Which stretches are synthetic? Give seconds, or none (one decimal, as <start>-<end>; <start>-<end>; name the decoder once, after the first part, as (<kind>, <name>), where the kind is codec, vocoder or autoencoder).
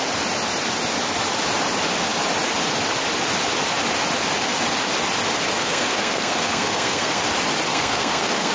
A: 5.5-7.2 (codec, SNAC); 7.7-8.5